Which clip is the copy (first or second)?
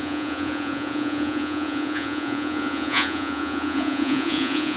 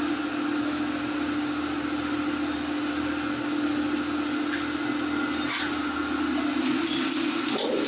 first